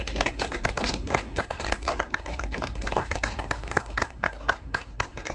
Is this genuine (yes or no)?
no